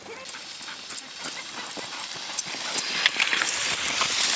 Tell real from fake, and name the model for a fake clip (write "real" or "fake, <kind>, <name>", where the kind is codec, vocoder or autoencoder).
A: fake, vocoder, BigVGAN v2